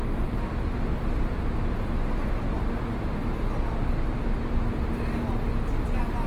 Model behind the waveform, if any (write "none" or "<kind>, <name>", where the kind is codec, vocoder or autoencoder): none